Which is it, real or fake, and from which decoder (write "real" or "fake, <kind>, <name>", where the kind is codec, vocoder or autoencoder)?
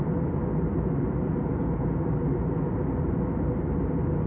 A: real